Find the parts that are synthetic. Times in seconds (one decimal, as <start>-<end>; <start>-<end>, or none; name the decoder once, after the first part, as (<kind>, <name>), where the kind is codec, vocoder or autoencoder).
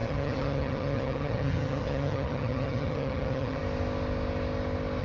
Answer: 0.0-3.6 (vocoder, HiFi-GAN)